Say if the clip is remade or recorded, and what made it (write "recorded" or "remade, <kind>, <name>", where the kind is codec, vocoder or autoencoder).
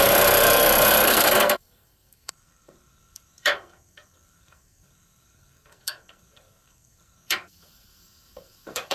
remade, codec, SNAC